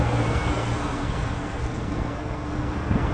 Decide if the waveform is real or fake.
fake